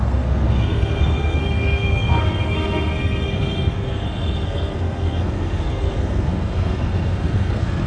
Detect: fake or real fake